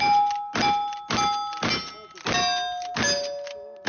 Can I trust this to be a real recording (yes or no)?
yes